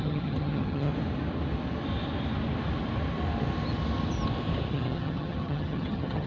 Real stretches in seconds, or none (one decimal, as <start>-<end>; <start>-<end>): 0.9-4.7